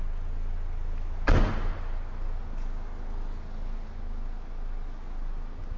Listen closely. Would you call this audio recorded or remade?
recorded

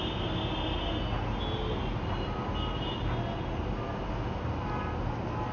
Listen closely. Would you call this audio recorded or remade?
recorded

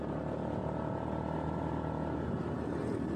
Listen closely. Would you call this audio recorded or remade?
recorded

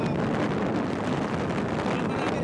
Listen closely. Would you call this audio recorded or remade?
recorded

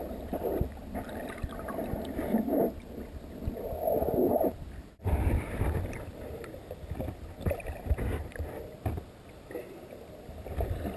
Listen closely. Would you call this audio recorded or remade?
remade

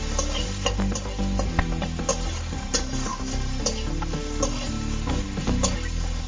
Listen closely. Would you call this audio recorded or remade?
recorded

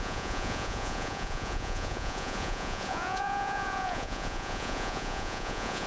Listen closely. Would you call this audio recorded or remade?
remade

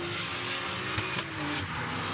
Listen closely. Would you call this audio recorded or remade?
recorded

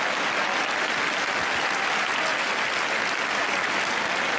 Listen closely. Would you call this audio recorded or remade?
recorded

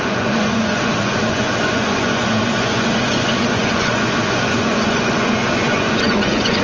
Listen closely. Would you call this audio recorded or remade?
remade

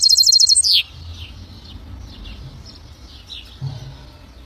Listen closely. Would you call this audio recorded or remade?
recorded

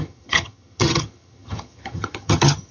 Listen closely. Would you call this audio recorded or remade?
remade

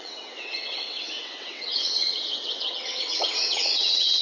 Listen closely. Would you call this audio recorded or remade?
remade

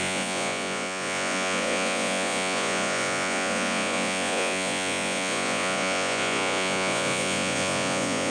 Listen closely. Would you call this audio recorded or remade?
remade